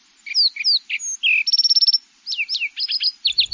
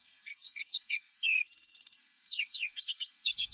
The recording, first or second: first